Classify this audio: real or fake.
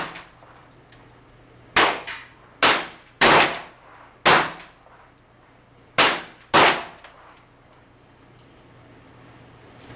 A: real